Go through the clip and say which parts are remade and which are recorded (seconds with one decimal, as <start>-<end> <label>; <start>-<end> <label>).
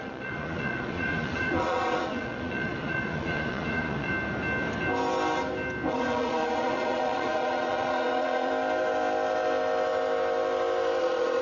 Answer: 0.0-4.1 remade; 4.1-5.9 recorded; 5.9-8.5 remade; 8.5-11.0 recorded; 11.0-11.4 remade